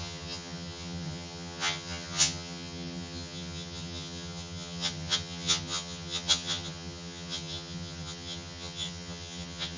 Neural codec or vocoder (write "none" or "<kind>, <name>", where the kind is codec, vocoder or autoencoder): vocoder, HiFi-GAN